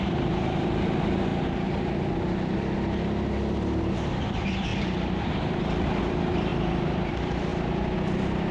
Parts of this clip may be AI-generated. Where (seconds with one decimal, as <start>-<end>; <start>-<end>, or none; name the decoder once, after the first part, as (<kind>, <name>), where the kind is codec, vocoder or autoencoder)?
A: 0.0-1.3 (vocoder, BigVGAN v2); 3.8-6.5; 7.1-7.5